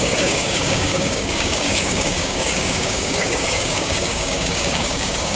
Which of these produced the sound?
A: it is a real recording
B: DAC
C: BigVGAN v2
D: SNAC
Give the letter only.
B